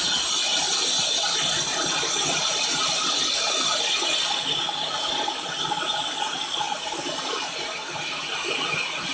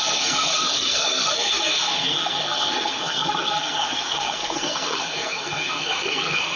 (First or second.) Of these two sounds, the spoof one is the second